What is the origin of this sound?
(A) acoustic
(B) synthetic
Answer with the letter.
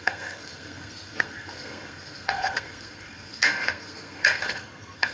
B